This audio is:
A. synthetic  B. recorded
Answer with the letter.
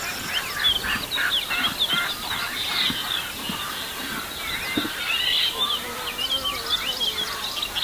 B